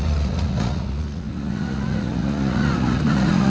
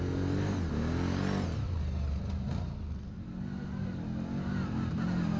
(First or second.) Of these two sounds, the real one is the second